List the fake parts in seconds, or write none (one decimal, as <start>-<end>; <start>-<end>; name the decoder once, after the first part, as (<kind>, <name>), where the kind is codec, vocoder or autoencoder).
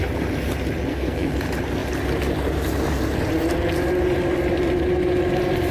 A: 0.9-1.4 (codec, SNAC)